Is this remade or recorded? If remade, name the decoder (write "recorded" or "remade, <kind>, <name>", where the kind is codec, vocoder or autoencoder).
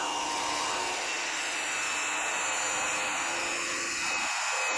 recorded